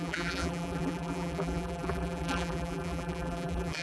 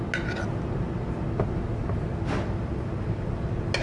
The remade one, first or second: first